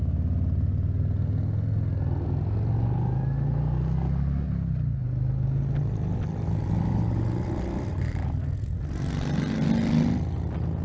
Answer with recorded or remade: recorded